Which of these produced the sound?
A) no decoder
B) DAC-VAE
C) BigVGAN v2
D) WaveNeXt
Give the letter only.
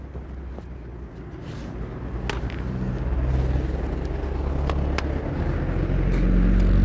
A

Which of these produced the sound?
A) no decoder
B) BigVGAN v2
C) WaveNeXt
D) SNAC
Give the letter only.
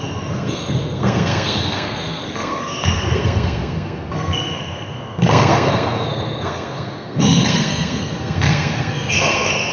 D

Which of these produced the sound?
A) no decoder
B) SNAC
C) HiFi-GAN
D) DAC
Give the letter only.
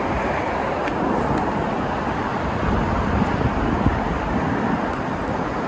A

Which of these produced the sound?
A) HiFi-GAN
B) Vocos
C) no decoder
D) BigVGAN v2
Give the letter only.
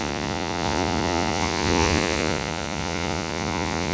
B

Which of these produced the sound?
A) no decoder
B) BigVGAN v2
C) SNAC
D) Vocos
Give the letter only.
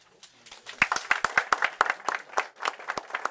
A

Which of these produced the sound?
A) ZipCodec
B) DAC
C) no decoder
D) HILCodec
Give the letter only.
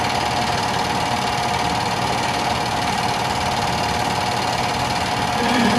C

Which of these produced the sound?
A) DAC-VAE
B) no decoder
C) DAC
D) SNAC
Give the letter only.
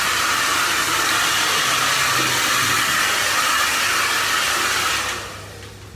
B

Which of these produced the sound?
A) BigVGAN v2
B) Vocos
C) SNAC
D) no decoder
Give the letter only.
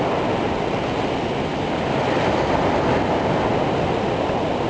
D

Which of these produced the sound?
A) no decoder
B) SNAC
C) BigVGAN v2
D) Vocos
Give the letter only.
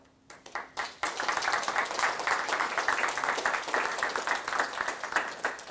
A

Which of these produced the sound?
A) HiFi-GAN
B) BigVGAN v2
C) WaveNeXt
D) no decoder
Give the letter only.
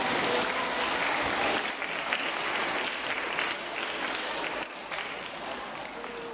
D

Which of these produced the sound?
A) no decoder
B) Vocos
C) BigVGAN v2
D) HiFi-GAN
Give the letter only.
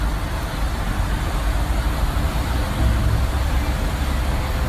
A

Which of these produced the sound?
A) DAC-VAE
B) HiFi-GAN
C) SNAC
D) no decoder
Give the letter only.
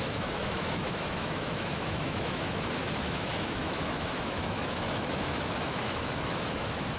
A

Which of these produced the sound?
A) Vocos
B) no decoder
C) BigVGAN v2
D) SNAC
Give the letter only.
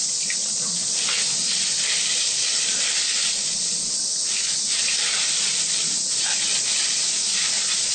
B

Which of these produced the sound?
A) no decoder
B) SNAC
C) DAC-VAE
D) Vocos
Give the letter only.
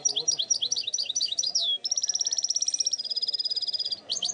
A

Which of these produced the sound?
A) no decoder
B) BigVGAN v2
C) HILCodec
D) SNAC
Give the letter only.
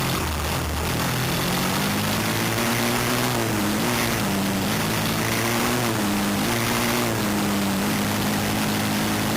A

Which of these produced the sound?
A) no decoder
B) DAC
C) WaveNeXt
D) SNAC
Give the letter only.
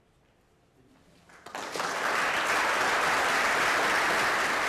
A